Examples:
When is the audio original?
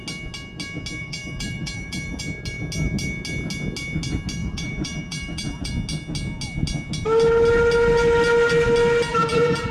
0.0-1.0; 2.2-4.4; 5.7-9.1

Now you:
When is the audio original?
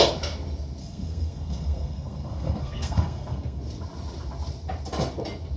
0.0-0.8; 3.6-5.6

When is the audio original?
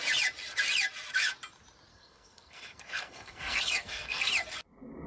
0.0-1.9; 4.3-5.1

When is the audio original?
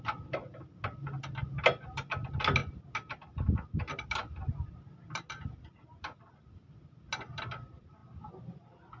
0.0-9.0